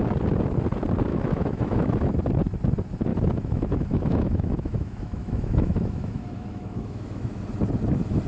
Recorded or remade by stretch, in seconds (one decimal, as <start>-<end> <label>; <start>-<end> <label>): 0.0-1.1 recorded; 1.1-2.2 remade; 2.2-3.1 recorded; 3.1-7.4 remade; 7.4-8.3 recorded